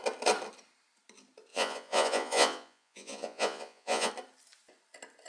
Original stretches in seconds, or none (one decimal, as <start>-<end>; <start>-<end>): 0.0-1.5; 4.1-5.3